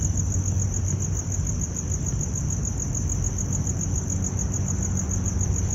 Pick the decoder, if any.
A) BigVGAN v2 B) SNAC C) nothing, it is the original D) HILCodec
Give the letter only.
C